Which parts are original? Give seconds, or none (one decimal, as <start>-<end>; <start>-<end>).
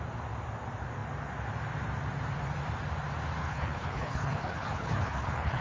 0.0-3.4